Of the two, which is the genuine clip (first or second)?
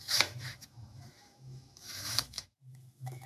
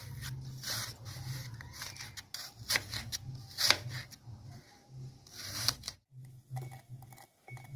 second